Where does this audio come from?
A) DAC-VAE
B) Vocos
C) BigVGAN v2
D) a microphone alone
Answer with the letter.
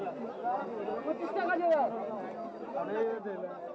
D